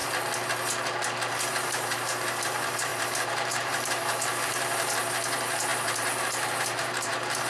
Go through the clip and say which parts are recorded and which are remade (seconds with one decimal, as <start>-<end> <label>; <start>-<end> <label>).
0.0-1.5 recorded; 1.5-7.5 remade